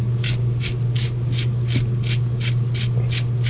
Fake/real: real